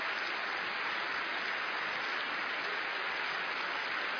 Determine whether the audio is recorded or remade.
recorded